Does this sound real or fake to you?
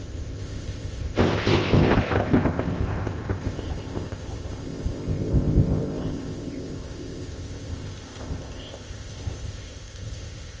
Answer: fake